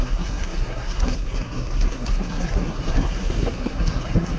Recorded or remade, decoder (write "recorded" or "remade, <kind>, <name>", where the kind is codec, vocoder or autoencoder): remade, codec, SNAC